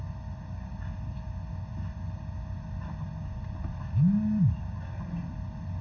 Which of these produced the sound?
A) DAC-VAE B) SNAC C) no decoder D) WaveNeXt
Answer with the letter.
C